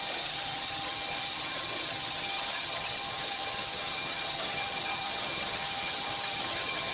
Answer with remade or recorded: remade